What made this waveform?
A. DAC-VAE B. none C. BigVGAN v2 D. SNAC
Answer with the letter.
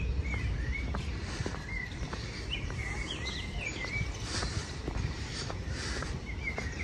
C